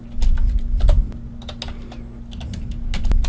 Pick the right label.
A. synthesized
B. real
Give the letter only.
B